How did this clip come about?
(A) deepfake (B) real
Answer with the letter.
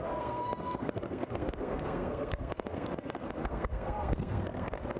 A